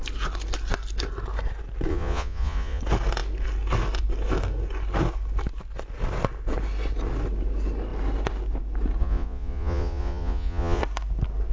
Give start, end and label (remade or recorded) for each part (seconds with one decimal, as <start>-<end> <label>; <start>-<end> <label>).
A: 0.0-1.9 recorded; 1.9-2.8 remade; 2.8-9.0 recorded; 9.0-10.8 remade; 10.8-11.5 recorded